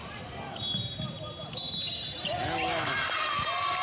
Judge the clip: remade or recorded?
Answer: recorded